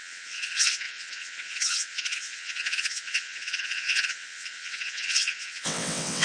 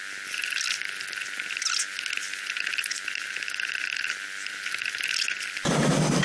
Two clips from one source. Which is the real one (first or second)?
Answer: second